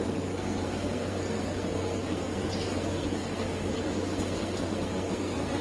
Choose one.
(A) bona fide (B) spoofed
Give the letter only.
B